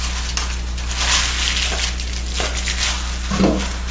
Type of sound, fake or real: real